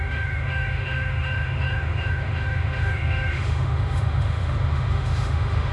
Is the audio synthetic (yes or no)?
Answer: yes